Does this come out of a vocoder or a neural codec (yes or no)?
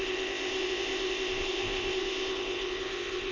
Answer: yes